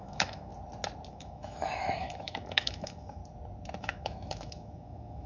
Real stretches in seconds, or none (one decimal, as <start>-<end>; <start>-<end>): 0.5-1.1; 3.2-3.8